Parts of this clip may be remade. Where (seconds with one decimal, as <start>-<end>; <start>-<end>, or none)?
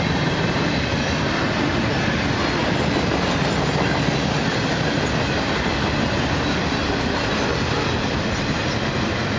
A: none